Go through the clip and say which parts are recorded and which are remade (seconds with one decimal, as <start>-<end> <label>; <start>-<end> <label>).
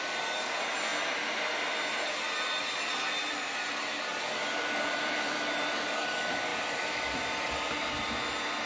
0.0-4.1 recorded; 4.1-6.1 remade; 6.1-6.5 recorded; 6.5-7.7 remade; 7.7-8.7 recorded